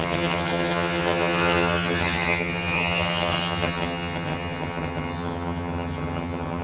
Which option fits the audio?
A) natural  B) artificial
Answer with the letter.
B